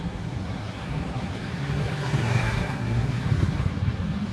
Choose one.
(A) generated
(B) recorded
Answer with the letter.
A